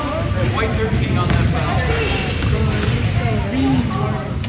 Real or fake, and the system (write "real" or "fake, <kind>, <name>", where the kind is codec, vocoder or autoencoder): real